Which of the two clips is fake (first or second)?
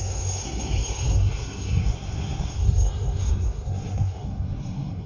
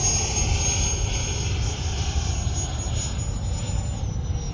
first